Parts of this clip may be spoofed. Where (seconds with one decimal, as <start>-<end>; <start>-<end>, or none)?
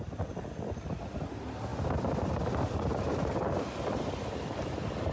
none